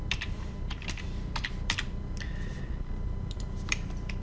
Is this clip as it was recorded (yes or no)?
no